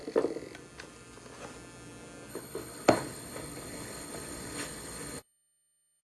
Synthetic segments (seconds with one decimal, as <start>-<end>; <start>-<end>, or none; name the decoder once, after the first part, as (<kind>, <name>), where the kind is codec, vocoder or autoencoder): 2.3-6.0 (codec, HILCodec)